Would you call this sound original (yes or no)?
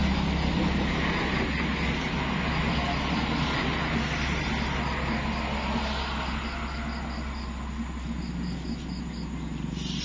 yes